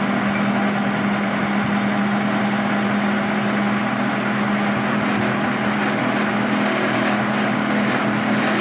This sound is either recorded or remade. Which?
recorded